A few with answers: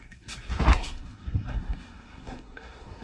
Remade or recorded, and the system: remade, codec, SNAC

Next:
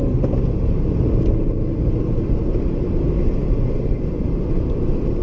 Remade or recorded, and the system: remade, vocoder, BigVGAN v2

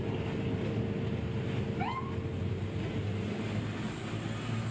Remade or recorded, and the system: recorded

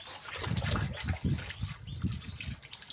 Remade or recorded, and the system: recorded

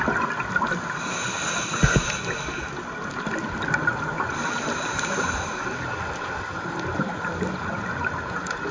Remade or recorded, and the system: recorded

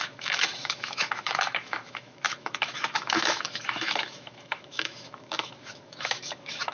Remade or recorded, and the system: remade, autoencoder, DAC-VAE